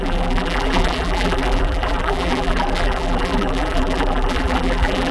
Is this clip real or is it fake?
fake